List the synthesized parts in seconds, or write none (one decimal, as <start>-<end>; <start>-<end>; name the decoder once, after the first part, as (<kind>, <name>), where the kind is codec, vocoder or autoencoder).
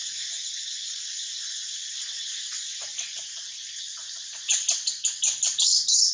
0.8-1.9 (vocoder, Vocos)